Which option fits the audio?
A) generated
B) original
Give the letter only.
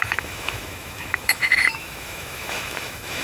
A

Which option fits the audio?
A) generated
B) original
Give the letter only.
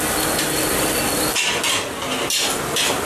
B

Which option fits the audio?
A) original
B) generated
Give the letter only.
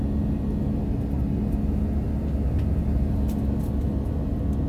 A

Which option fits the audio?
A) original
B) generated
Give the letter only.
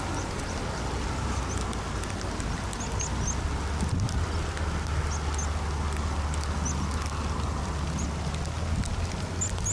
A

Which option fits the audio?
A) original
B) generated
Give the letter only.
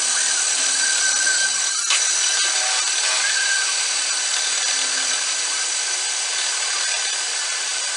A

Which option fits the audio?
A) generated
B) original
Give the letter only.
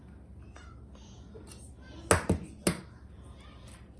B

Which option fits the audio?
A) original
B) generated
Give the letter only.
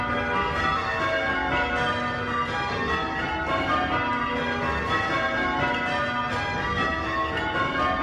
A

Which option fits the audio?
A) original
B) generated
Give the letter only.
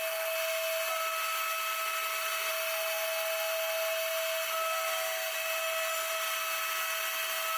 A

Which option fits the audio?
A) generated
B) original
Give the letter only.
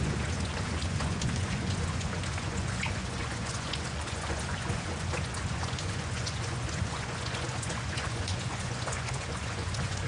A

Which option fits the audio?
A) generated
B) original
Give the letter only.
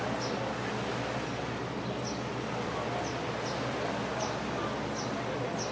B